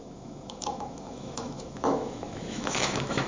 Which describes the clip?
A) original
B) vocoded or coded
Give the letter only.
B